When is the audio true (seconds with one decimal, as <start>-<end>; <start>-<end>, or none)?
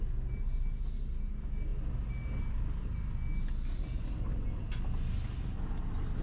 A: 0.0-6.2